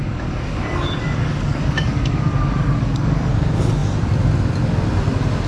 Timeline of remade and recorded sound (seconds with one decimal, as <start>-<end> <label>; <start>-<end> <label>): 0.0-3.3 remade; 3.3-5.5 recorded